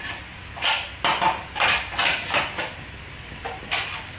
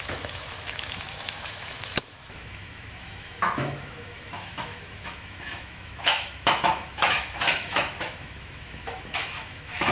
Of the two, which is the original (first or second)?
first